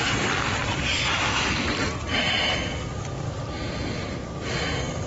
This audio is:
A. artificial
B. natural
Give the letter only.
B